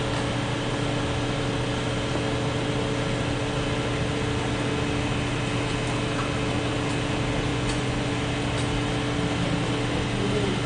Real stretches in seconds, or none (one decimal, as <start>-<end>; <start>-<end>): 0.0-7.5; 8.1-10.7